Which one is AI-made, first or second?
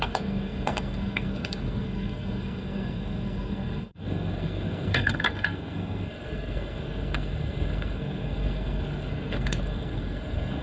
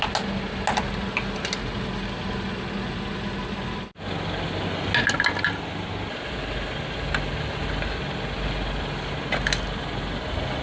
first